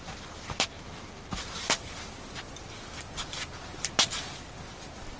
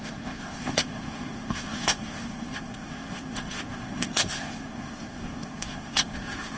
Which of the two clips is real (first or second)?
first